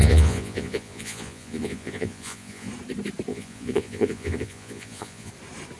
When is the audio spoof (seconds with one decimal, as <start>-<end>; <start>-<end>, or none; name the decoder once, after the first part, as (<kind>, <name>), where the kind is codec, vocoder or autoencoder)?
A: 0.0-2.7 (vocoder, Vocos); 3.3-5.3